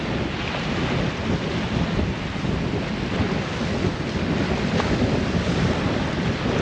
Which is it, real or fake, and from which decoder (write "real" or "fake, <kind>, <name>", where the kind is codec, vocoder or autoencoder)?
real